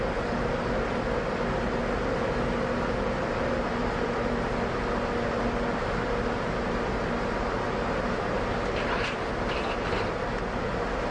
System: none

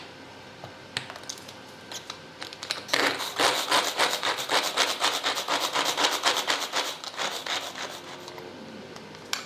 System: none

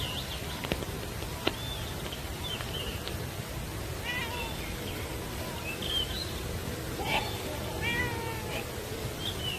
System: none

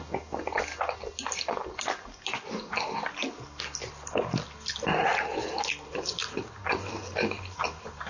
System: none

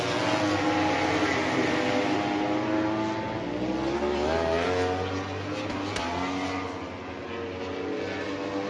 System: none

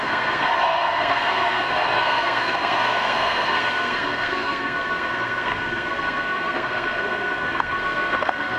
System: codec, SNAC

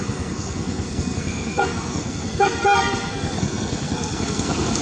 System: codec, SNAC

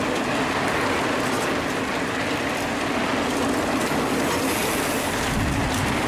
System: none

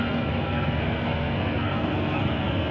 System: codec, SNAC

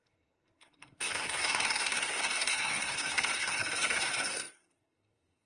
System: codec, SNAC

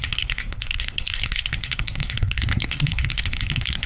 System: codec, SNAC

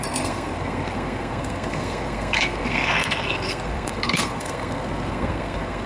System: codec, SNAC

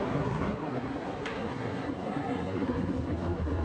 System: codec, SNAC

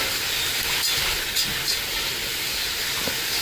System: none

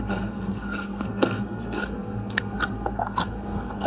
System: codec, SNAC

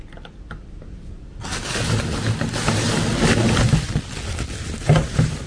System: none